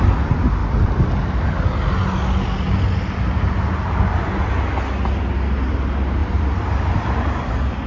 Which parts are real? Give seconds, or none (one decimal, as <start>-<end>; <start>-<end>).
0.0-0.6; 1.1-6.2; 7.5-7.9